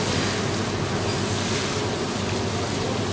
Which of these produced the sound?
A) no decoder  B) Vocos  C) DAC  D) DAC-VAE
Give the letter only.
A